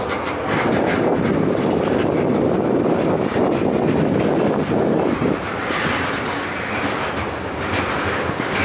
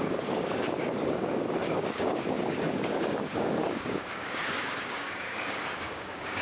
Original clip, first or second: first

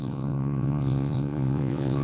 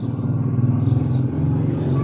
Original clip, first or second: second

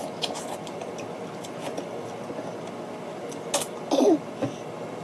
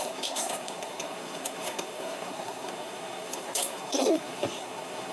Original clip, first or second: first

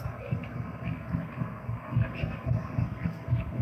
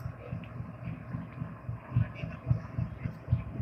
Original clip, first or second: second